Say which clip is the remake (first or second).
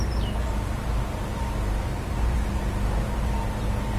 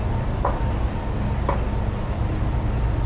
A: first